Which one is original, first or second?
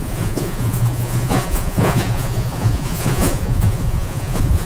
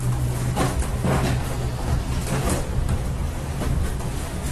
second